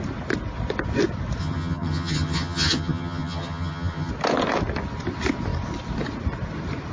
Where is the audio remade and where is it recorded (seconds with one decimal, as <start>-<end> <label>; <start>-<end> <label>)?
0.0-1.4 recorded; 1.4-4.1 remade; 4.1-6.9 recorded